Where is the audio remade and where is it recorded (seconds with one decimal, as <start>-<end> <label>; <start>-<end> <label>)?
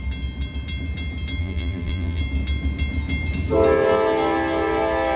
0.0-1.4 recorded; 1.4-2.2 remade; 2.2-5.2 recorded